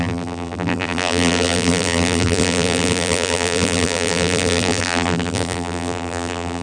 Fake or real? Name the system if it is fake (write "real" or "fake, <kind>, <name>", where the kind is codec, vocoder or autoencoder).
fake, vocoder, BigVGAN v2